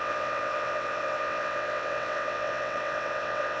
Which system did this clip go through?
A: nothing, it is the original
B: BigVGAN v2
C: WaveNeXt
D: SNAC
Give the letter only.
C